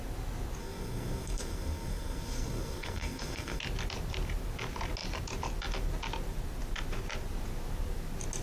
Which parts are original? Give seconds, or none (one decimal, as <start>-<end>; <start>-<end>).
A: 0.0-0.6; 3.6-8.4